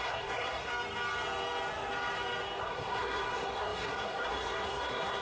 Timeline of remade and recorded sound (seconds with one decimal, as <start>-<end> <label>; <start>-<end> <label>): 0.0-0.7 remade; 0.7-2.6 recorded; 2.6-5.2 remade